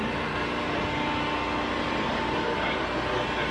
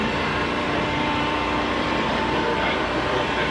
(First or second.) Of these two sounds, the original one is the first